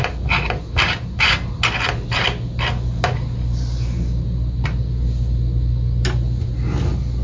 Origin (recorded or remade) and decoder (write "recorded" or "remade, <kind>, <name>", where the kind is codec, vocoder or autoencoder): recorded